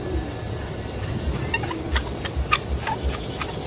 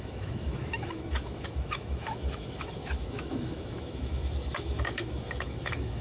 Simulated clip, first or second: second